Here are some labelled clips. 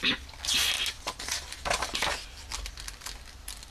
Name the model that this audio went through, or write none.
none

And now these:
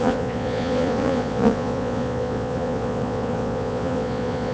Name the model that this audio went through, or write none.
vocoder, Vocos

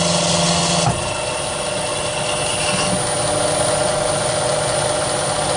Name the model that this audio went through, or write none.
none